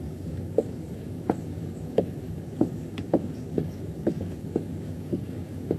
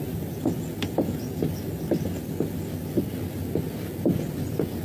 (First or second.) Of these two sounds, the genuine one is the second